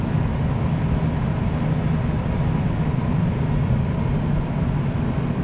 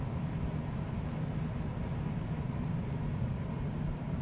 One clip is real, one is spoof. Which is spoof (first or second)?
second